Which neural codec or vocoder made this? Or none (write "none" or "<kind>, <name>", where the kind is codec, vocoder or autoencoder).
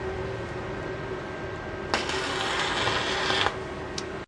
none